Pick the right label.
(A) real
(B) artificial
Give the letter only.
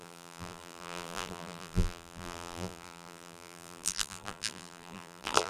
B